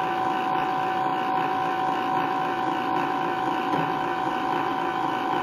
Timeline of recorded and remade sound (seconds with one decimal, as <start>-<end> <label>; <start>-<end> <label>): 0.0-5.4 recorded